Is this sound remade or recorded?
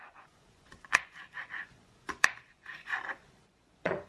remade